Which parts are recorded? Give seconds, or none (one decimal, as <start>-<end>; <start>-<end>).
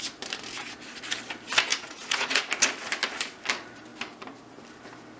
0.0-1.7; 2.4-5.2